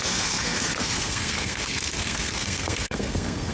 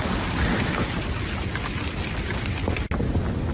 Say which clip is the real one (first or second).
second